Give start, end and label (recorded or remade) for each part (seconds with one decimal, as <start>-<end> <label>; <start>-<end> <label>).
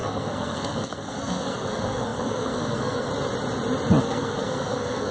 0.0-3.1 remade; 3.1-4.0 recorded; 4.0-5.1 remade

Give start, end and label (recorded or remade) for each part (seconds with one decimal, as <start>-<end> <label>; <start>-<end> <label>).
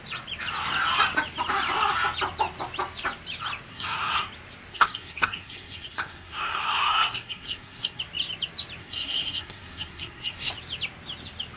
0.0-3.7 recorded; 3.7-4.3 remade; 4.3-4.7 recorded; 4.7-8.0 remade; 8.0-8.8 recorded; 8.8-10.5 remade; 10.5-11.6 recorded